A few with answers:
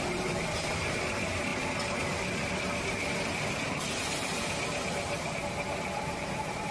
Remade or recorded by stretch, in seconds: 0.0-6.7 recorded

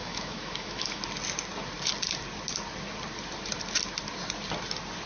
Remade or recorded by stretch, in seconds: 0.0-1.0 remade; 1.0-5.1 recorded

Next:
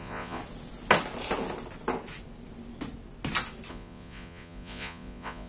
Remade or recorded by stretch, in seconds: 0.0-0.4 remade; 0.4-3.7 recorded; 3.7-5.5 remade

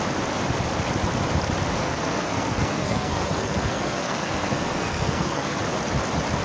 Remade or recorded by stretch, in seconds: 0.0-1.8 recorded; 1.8-5.6 remade; 5.6-6.4 recorded

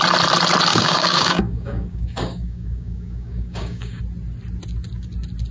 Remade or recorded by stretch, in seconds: 0.0-0.7 recorded; 0.7-4.0 remade; 4.0-5.5 recorded